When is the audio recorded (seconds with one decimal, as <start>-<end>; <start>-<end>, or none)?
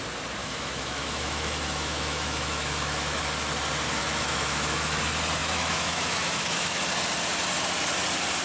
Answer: 0.0-0.4; 3.2-4.0; 5.0-5.4; 6.8-8.4